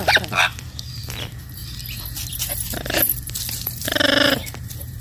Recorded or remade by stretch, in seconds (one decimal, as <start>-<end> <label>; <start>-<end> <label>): 0.0-5.0 remade